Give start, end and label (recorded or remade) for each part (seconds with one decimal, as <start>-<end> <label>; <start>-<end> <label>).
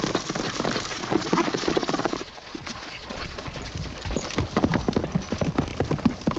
0.0-0.9 recorded; 0.9-3.7 remade; 3.7-6.4 recorded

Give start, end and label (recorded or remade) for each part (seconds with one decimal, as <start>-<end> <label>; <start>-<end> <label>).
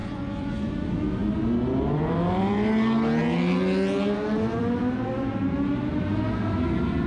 0.0-0.7 remade; 0.7-7.1 recorded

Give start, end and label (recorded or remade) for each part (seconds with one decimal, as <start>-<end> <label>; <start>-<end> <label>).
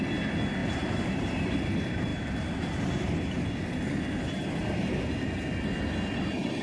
0.0-0.6 recorded; 0.6-1.6 remade; 1.6-6.6 recorded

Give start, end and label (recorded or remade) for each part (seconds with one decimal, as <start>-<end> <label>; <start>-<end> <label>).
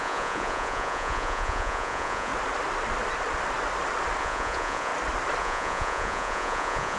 0.0-2.3 remade; 2.3-4.2 recorded; 4.2-4.9 remade; 4.9-5.4 recorded; 5.4-7.0 remade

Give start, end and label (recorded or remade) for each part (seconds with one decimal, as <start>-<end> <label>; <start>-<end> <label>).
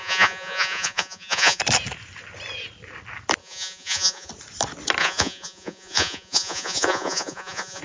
0.0-1.6 remade; 1.6-3.4 recorded; 3.4-4.3 remade; 4.3-5.0 recorded; 5.0-7.8 remade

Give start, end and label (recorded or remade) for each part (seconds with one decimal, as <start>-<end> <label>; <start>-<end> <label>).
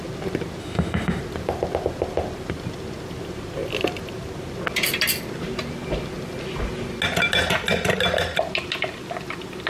0.0-0.6 recorded; 0.6-1.2 remade; 1.2-9.7 recorded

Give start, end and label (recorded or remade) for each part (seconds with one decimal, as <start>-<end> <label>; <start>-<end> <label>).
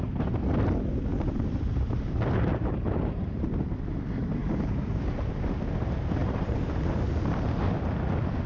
0.0-1.1 recorded; 1.1-3.9 remade; 3.9-4.4 recorded; 4.4-5.5 remade; 5.5-6.2 recorded; 6.2-6.8 remade; 6.8-8.5 recorded